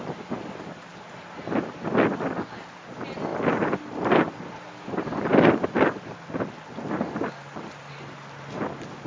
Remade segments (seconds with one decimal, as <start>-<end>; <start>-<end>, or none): none